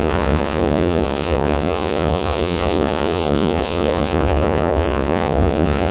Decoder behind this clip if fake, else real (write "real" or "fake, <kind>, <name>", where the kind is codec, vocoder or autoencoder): fake, vocoder, Vocos